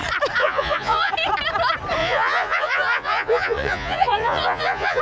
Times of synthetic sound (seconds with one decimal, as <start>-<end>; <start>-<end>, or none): 0.4-1.1; 2.0-5.0